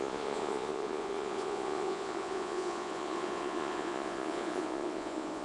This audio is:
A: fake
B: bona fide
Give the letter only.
A